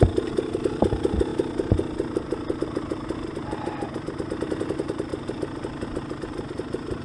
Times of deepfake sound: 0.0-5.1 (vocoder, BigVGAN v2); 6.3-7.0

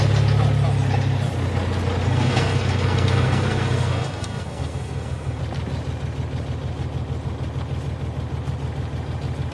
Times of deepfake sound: 2.1-5.4 (codec, SNAC)

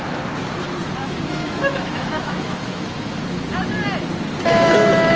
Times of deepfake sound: 1.0-3.2 (autoencoder, DAC-VAE)

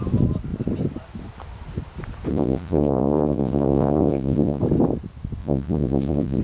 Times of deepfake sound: 2.3-4.6 (vocoder, Vocos); 5.4-6.4

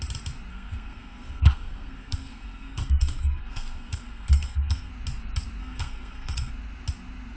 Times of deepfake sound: 0.5-4.9 (codec, SNAC); 5.6-6.5

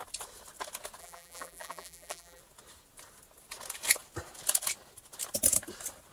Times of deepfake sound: 1.0-2.4 (vocoder, BigVGAN v2)